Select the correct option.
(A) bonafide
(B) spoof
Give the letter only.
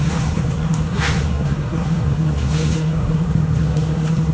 B